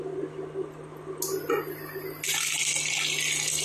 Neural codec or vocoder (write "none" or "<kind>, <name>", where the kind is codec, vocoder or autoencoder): none